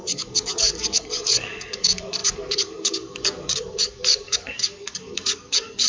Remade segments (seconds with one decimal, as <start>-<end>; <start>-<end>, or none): 0.0-5.9